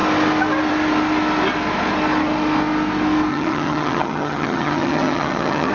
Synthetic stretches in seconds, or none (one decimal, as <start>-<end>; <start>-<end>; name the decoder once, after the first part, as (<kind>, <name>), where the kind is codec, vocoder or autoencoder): 3.3-5.7 (vocoder, HiFi-GAN)